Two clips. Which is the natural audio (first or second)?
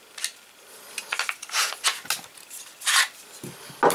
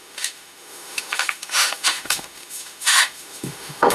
first